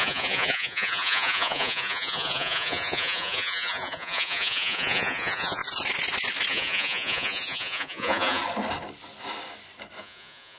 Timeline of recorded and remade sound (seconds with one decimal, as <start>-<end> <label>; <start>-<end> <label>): 0.0-5.6 remade; 5.6-6.5 recorded; 6.5-8.4 remade; 8.4-10.0 recorded; 10.0-10.6 remade

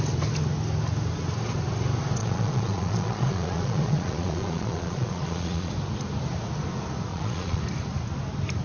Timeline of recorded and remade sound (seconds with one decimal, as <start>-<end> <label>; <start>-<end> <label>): 0.0-2.2 recorded; 2.2-5.7 remade; 5.7-7.1 recorded; 7.1-7.6 remade; 7.6-8.6 recorded